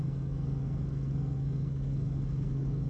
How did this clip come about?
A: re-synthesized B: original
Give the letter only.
A